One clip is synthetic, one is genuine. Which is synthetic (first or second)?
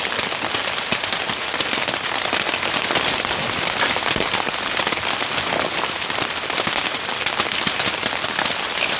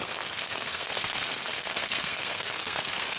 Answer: second